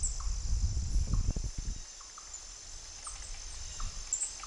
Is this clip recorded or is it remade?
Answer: recorded